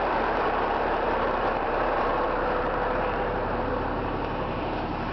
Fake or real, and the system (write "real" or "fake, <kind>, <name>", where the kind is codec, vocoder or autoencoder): fake, vocoder, BigVGAN v2